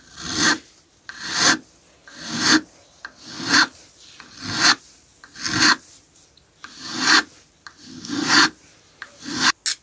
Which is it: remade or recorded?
recorded